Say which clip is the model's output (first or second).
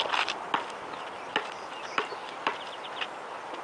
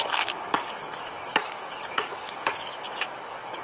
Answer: second